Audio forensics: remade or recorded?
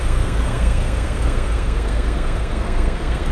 remade